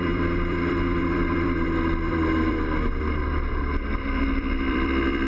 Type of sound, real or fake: fake